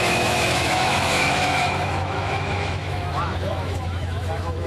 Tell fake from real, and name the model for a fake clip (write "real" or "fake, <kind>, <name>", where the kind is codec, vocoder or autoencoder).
fake, autoencoder, DAC-VAE